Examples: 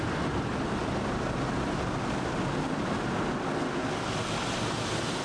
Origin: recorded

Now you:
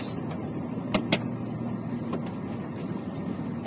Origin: recorded